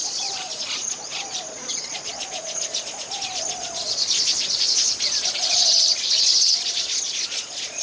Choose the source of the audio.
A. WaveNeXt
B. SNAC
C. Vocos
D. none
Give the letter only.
C